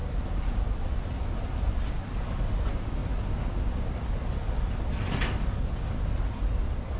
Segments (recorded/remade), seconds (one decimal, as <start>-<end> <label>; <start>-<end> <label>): 0.0-7.0 recorded